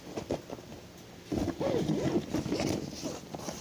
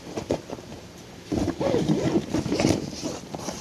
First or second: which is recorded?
first